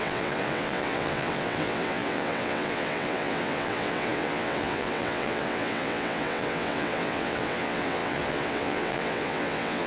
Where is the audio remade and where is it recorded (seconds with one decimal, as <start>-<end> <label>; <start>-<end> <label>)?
0.0-9.9 remade